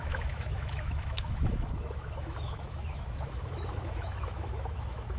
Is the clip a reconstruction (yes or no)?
yes